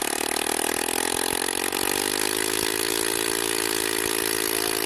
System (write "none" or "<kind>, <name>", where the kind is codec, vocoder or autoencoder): none